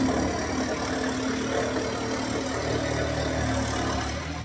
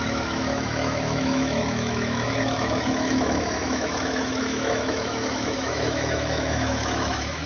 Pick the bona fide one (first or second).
first